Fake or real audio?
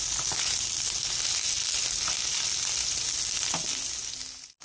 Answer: real